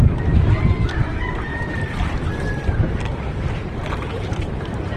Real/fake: fake